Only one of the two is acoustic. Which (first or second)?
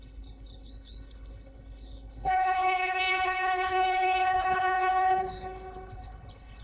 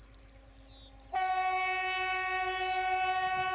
second